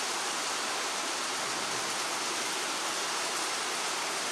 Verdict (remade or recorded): recorded